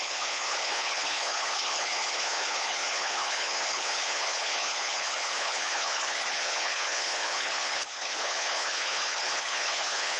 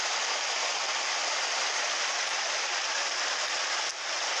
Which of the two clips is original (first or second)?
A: second